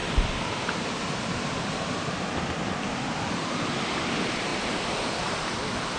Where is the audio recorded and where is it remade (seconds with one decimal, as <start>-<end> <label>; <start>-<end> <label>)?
0.0-4.5 remade; 4.5-5.0 recorded; 5.0-6.0 remade